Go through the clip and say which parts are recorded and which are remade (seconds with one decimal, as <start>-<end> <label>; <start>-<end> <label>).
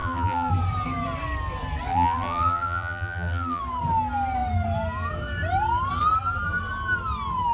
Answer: 0.0-0.5 remade; 0.5-1.9 recorded; 1.9-3.6 remade; 3.6-7.5 recorded